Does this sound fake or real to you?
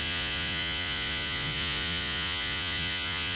fake